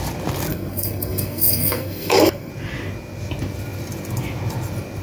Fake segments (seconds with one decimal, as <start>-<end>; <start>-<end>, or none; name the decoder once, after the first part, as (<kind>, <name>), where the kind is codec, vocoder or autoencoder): 0.5-2.5 (codec, SNAC)